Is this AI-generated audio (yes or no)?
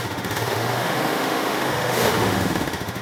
yes